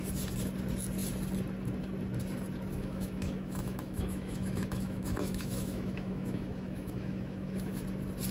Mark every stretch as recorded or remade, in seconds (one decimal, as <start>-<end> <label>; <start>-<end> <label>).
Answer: 0.0-2.8 recorded; 2.8-7.8 remade; 7.8-8.3 recorded